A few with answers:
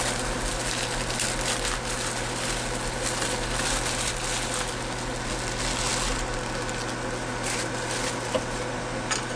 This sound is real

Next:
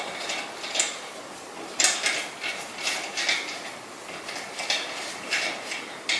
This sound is real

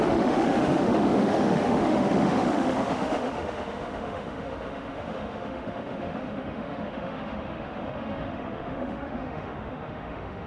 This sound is fake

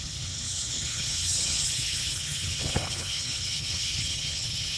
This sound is fake